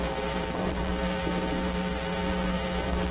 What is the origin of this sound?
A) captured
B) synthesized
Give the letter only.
B